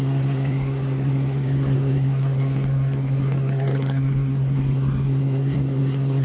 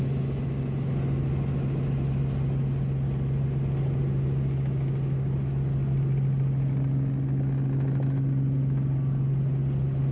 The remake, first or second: first